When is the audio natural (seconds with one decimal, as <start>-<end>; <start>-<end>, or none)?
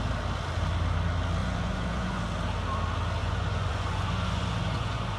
0.0-1.4; 2.2-3.2